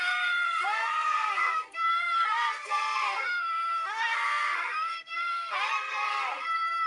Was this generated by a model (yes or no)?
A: yes